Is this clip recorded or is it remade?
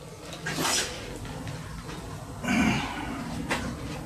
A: recorded